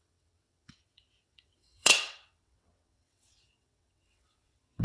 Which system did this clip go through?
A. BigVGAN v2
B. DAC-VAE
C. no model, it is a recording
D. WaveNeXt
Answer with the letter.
D